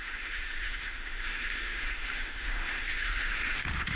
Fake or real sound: fake